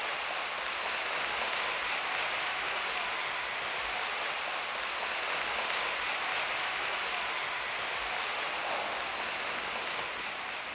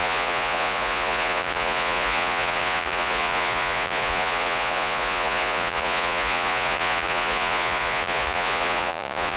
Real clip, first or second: first